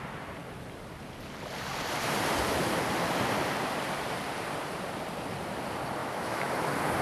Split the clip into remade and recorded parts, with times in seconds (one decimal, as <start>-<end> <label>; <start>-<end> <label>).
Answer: 0.0-6.0 recorded; 6.0-6.5 remade; 6.5-7.0 recorded